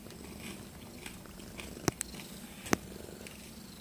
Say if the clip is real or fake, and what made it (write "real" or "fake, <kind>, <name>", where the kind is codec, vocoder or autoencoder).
real